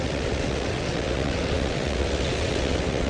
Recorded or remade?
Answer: remade